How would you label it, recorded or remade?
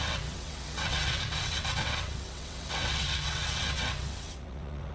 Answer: remade